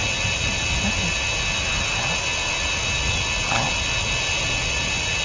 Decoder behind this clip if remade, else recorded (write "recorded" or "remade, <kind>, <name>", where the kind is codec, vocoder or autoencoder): recorded